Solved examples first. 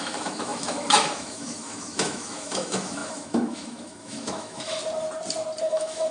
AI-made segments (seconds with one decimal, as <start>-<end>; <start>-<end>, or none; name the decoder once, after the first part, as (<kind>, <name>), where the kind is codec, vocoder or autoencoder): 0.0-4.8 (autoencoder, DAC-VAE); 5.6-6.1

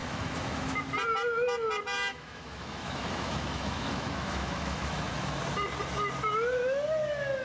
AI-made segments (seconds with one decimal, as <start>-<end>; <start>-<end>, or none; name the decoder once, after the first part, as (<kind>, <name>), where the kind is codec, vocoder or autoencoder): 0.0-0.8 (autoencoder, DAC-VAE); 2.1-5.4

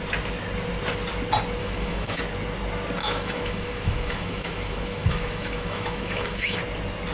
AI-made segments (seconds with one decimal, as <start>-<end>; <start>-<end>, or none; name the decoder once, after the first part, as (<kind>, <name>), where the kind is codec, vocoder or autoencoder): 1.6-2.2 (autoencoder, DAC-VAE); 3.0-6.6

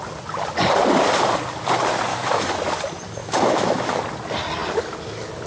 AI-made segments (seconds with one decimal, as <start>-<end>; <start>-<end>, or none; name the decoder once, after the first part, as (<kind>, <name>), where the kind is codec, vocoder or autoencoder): 2.1-2.6 (autoencoder, DAC-VAE); 3.2-4.0